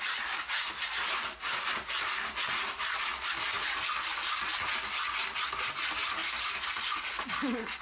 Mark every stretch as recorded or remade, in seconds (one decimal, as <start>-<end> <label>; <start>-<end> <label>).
0.0-7.8 recorded